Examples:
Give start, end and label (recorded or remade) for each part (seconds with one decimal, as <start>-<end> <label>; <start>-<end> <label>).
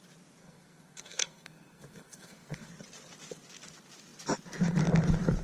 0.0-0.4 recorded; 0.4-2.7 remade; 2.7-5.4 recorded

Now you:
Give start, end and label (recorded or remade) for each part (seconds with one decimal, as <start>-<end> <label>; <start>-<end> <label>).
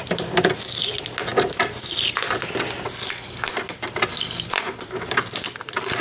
0.0-6.0 recorded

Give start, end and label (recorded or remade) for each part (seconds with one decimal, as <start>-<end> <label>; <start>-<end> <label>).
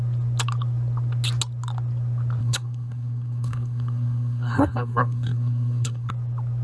0.0-2.4 recorded; 2.4-6.1 remade; 6.1-6.6 recorded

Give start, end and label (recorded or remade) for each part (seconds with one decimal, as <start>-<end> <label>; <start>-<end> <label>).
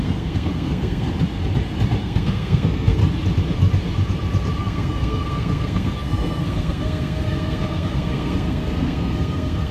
0.0-1.1 remade; 1.1-2.0 recorded; 2.0-3.0 remade; 3.0-4.6 recorded; 4.6-9.7 remade